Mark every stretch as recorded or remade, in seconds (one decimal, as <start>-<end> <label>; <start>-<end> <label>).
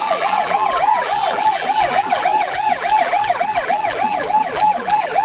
0.0-5.2 remade